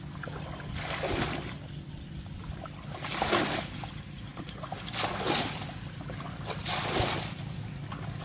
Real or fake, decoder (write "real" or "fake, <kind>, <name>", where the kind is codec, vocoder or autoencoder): real